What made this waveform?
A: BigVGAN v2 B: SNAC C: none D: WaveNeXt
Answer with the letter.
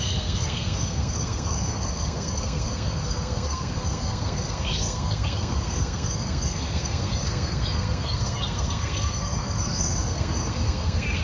B